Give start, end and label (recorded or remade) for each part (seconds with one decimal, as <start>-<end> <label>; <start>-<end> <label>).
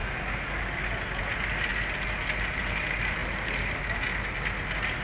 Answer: 0.0-5.0 recorded